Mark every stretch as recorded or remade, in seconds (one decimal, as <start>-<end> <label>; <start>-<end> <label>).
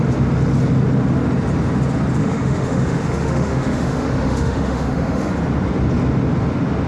0.0-2.2 recorded; 2.2-5.3 remade; 5.3-6.9 recorded